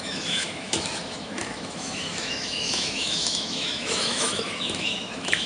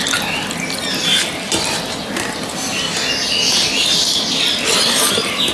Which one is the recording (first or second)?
second